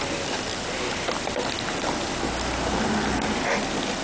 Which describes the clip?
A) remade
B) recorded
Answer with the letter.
B